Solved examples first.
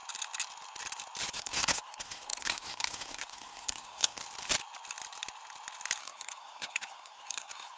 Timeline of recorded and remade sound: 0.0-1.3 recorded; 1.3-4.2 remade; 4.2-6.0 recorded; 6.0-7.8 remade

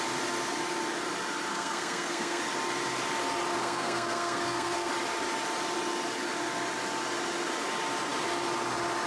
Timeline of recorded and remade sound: 0.0-1.5 recorded; 1.5-2.4 remade; 2.4-3.6 recorded; 3.6-4.9 remade; 4.9-9.1 recorded

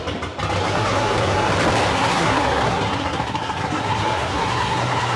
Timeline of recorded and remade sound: 0.0-0.6 recorded; 0.6-1.5 remade; 1.5-1.9 recorded; 1.9-5.2 remade

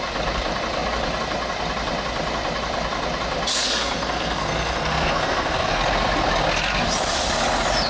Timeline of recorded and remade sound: 0.0-3.5 recorded; 3.5-5.8 remade; 5.8-7.9 recorded

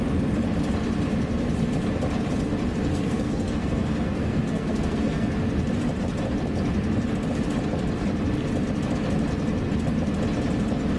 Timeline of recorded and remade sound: 0.0-2.9 recorded; 2.9-5.3 remade; 5.3-11.0 recorded

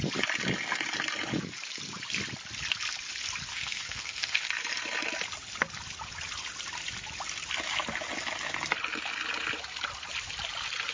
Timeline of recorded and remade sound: 0.0-3.5 recorded; 3.5-4.5 remade; 4.5-10.9 recorded